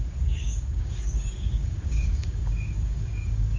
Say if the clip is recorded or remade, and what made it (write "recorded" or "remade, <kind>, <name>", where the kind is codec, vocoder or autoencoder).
remade, codec, DAC